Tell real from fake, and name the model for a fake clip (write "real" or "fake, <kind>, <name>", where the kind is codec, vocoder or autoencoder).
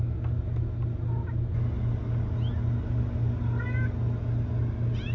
real